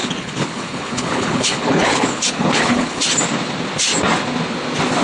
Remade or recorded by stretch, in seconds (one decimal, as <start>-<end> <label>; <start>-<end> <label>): 0.0-3.0 remade; 3.0-5.0 recorded